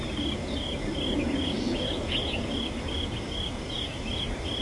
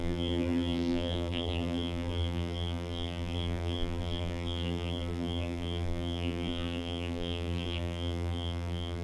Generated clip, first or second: second